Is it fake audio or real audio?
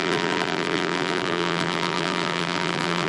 fake